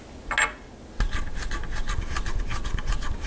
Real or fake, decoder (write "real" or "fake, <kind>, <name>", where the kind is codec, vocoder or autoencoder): real